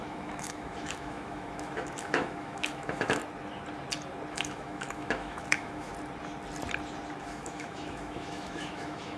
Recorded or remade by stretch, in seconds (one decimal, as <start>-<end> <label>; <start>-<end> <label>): 0.0-3.2 remade; 3.2-4.3 recorded; 4.3-5.9 remade; 5.9-7.2 recorded; 7.2-9.2 remade